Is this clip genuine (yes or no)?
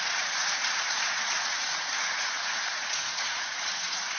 no